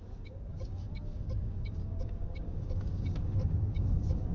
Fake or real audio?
fake